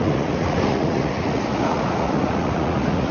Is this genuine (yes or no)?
no